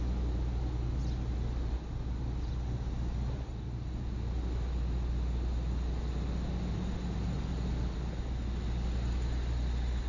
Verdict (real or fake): real